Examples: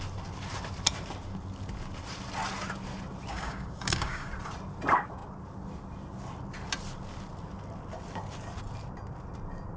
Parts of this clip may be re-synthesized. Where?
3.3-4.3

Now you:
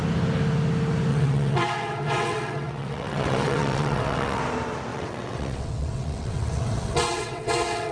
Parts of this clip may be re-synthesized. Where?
1.1-4.4; 4.9-7.9

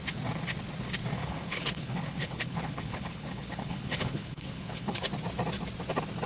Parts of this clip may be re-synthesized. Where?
1.2-5.0